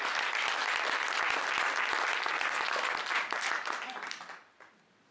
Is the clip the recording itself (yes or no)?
yes